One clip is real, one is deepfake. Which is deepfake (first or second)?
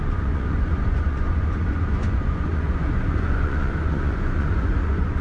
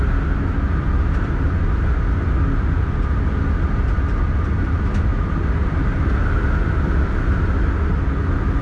first